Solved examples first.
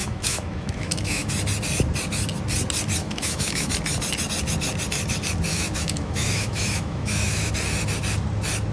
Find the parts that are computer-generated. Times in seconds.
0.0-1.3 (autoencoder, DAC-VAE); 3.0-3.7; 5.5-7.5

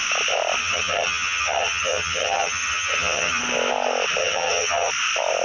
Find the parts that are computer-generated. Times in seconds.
0.6-3.4 (vocoder, HiFi-GAN); 4.2-4.9

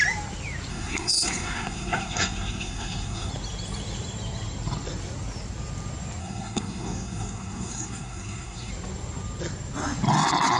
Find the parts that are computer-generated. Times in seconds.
0.7-3.3 (codec, SNAC); 6.2-8.7

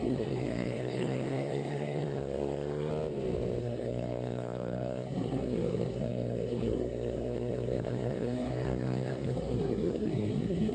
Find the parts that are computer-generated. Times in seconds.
0.0-2.9 (codec, SNAC); 3.6-10.7